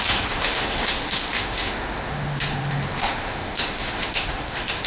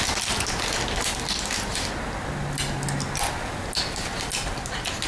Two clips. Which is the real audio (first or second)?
second